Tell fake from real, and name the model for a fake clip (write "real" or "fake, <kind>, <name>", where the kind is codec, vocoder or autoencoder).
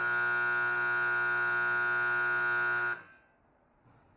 real